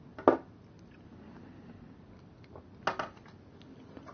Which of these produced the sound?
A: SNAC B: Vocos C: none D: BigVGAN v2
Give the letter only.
C